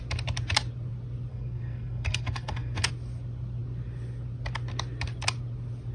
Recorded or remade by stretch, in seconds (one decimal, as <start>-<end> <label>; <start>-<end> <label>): 0.0-1.3 recorded; 1.3-2.9 remade; 2.9-5.9 recorded